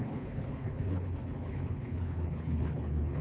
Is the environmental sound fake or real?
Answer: fake